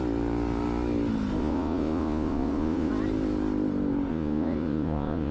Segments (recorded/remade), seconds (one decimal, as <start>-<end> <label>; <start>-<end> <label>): 0.0-1.4 recorded; 1.4-2.9 remade; 2.9-4.1 recorded; 4.1-5.3 remade